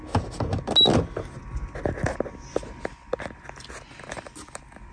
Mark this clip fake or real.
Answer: real